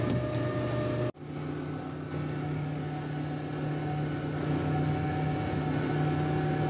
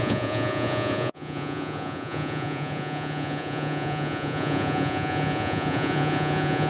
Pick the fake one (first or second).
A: second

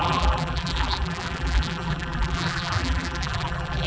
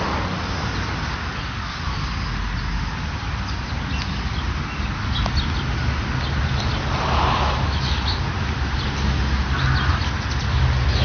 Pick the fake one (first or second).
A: first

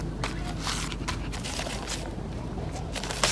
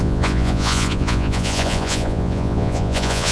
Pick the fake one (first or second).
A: second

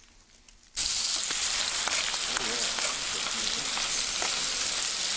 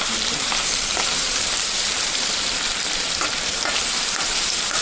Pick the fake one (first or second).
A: second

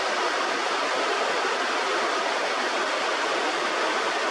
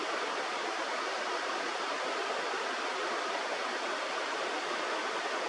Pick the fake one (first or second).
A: second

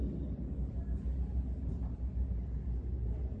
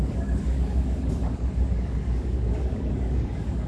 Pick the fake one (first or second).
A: second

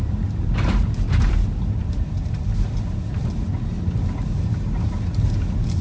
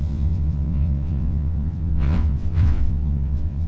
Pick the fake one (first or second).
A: second